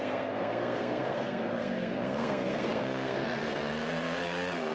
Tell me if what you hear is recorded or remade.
remade